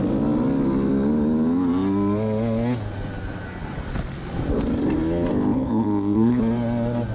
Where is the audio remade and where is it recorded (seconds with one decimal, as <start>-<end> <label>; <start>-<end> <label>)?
0.0-5.3 recorded; 5.3-6.4 remade; 6.4-7.1 recorded